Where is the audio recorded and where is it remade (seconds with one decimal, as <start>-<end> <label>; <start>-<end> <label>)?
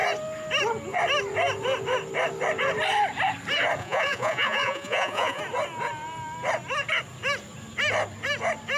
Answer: 0.0-3.8 recorded; 3.8-5.4 remade; 5.4-8.8 recorded